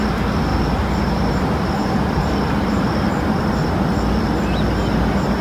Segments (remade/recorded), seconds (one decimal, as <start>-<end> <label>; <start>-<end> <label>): 0.0-0.5 recorded; 0.5-3.7 remade; 3.7-5.4 recorded